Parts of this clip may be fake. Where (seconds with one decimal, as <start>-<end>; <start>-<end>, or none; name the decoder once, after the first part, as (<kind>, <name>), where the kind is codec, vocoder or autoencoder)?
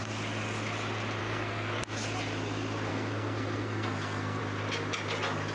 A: 1.2-1.8 (codec, SNAC); 2.9-4.4